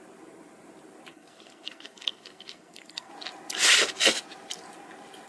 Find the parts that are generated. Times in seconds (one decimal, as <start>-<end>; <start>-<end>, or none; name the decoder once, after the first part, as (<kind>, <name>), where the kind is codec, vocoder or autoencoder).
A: 1.1-3.1 (codec, SNAC)